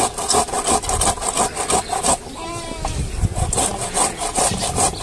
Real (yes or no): yes